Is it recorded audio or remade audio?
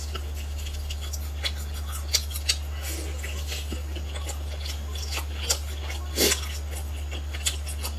recorded